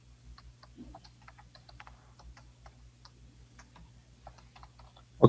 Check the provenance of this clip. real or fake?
fake